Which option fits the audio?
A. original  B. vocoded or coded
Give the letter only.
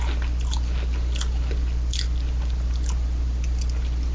A